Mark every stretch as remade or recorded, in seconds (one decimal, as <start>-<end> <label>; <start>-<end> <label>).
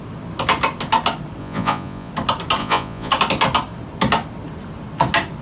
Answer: 0.0-1.4 recorded; 1.4-2.1 remade; 2.1-2.6 recorded; 2.6-3.1 remade; 3.1-5.4 recorded